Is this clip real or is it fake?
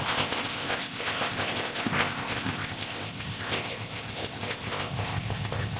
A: fake